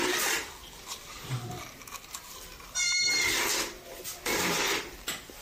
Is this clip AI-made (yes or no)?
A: no